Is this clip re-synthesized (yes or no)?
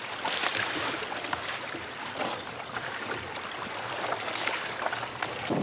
no